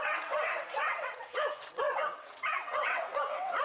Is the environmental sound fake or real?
fake